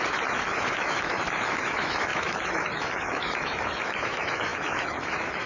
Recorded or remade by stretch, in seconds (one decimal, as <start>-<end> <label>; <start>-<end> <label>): 0.0-5.5 remade